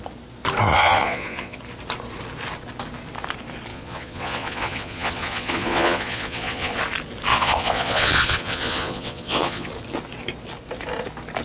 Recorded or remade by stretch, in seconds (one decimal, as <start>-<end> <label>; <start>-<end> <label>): 0.0-0.7 recorded; 0.7-1.6 remade; 1.6-3.7 recorded; 3.7-6.7 remade; 6.7-7.3 recorded; 7.3-9.7 remade; 9.7-11.4 recorded